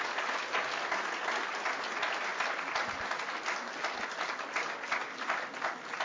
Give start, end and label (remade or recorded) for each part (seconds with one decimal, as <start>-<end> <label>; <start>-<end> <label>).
0.0-6.0 recorded